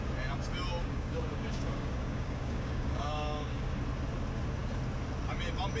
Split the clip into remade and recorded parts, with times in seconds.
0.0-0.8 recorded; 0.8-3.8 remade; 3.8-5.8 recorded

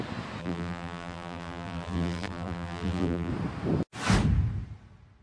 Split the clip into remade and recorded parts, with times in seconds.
0.0-0.4 recorded; 0.4-3.3 remade; 3.3-5.2 recorded

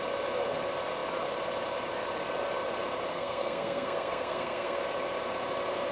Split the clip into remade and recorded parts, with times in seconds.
0.0-3.1 recorded; 3.1-4.8 remade; 4.8-5.9 recorded

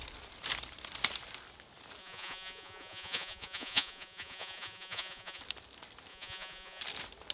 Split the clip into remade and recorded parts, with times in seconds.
0.0-2.0 recorded; 2.0-5.4 remade; 5.4-6.1 recorded; 6.1-6.8 remade; 6.8-7.3 recorded

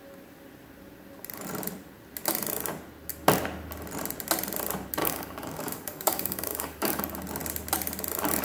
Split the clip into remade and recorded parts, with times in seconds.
0.0-5.0 recorded; 5.0-7.0 remade; 7.0-8.4 recorded

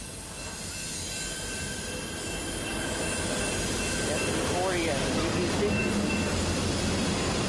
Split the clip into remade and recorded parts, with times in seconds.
0.0-7.5 recorded